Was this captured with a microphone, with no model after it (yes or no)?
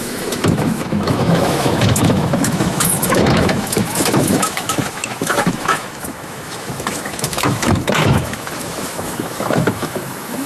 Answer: no